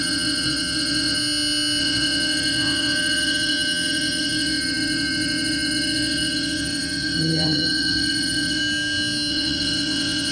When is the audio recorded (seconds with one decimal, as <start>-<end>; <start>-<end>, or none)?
1.2-1.8; 8.6-9.3